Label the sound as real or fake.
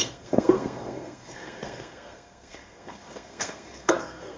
fake